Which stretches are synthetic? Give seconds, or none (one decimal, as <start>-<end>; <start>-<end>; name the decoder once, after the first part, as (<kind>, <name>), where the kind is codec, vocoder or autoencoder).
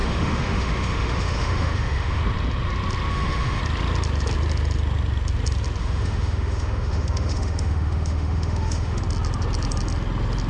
0.0-2.2 (autoencoder, DAC-VAE); 3.1-3.6; 5.8-9.0